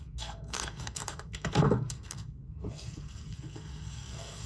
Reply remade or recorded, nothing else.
remade